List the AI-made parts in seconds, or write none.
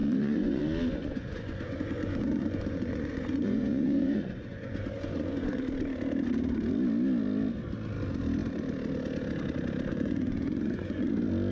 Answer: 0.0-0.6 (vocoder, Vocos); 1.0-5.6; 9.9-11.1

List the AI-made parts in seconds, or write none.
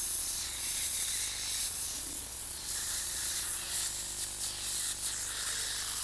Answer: 0.0-1.1 (vocoder, Vocos); 1.6-3.8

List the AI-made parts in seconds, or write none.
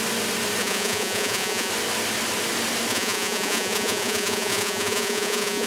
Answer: 0.6-1.7 (vocoder, Vocos); 2.9-5.7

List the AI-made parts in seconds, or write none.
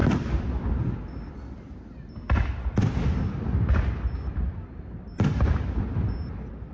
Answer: none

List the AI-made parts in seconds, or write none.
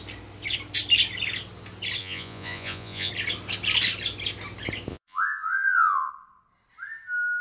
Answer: 2.0-3.1 (vocoder, Vocos); 4.9-6.1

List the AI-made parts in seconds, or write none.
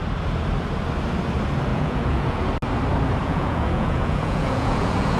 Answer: 1.7-2.5 (vocoder, Vocos); 3.2-5.2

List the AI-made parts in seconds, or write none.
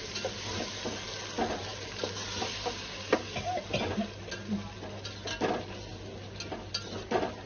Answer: none